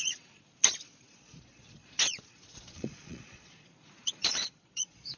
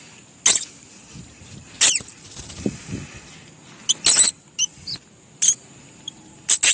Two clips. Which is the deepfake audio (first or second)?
first